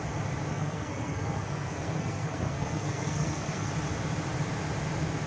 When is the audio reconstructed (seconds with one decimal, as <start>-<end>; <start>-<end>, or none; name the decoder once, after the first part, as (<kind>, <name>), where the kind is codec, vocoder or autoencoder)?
0.5-3.7 (codec, SNAC)